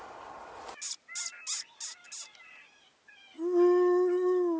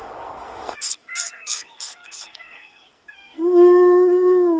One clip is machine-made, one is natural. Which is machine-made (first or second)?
second